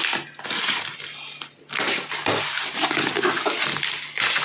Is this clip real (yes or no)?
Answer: yes